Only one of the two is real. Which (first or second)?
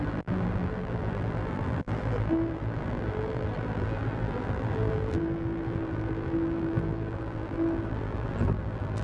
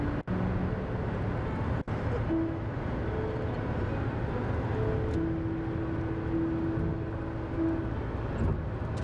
second